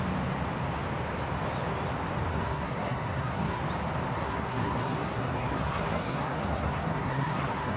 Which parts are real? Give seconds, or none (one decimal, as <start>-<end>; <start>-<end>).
0.0-2.3; 3.6-4.1